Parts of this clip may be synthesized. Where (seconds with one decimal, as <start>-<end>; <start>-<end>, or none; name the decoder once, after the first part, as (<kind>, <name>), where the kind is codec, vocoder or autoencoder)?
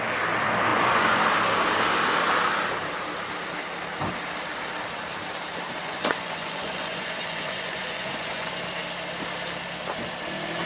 0.7-1.2 (vocoder, Vocos); 5.8-8.5